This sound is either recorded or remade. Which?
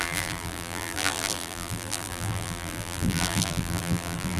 remade